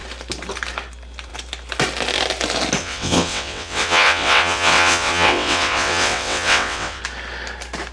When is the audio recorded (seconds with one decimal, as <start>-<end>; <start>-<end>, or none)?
0.0-2.8; 7.0-7.9